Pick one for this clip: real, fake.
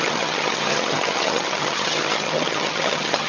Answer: fake